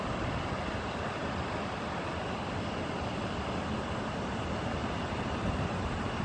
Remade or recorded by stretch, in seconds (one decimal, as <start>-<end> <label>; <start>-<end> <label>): 0.0-4.8 recorded; 4.8-6.2 remade